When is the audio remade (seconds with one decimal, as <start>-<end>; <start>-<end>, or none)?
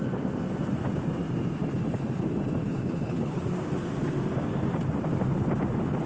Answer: 2.6-3.4